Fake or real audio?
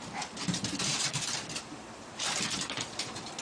fake